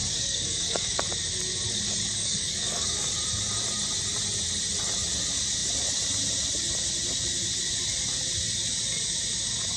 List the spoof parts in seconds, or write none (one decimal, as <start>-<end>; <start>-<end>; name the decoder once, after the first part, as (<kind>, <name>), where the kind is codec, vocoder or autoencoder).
0.0-1.0 (codec, DAC); 2.0-3.1